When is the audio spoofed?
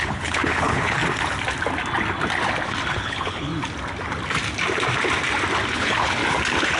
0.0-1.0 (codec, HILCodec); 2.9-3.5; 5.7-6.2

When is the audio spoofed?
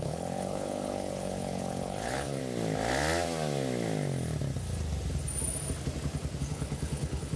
0.0-2.4 (codec, HILCodec); 6.4-7.4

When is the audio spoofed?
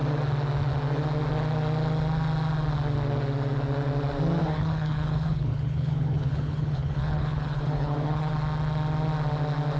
4.4-8.3 (codec, HILCodec)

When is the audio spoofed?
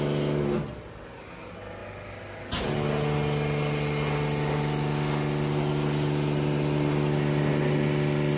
none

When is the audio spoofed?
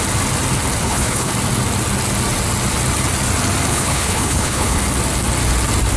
0.8-1.3 (codec, HILCodec); 3.7-4.8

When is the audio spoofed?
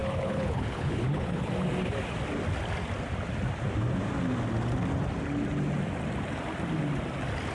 0.0-1.5 (codec, HILCodec)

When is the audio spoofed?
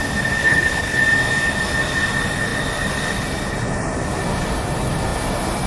0.4-1.0 (codec, HILCodec)